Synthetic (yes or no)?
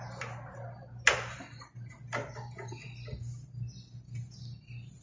no